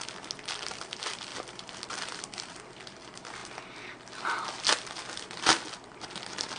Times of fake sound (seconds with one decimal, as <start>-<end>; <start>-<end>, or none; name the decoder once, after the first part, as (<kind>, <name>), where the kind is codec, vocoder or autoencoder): none